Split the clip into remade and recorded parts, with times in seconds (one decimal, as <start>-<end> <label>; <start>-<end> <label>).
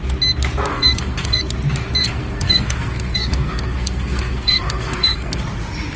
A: 0.0-0.7 recorded; 0.7-1.4 remade; 1.4-2.0 recorded; 2.0-5.4 remade; 5.4-6.0 recorded